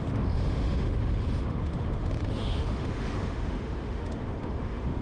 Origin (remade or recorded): remade